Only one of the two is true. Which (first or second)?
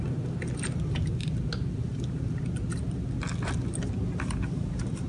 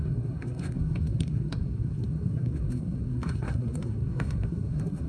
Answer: first